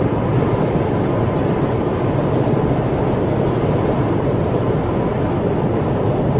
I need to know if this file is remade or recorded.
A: remade